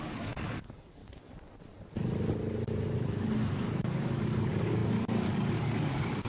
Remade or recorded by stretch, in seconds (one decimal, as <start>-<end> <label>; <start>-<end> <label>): 0.0-1.0 remade; 1.0-3.5 recorded; 3.5-6.3 remade

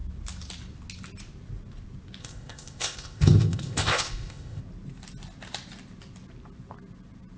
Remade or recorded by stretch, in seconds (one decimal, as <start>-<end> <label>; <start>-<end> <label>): 0.0-2.2 recorded; 2.2-4.6 remade; 4.6-7.4 recorded